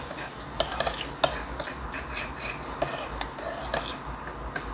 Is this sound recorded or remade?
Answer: recorded